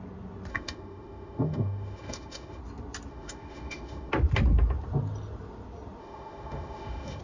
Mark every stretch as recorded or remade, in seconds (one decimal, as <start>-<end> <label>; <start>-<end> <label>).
0.0-0.5 recorded; 0.5-2.6 remade; 2.6-3.1 recorded; 3.1-4.1 remade; 4.1-6.0 recorded; 6.0-7.2 remade